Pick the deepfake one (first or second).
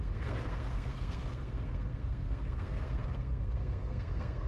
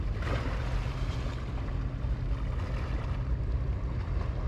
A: first